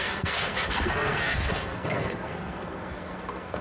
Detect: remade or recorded remade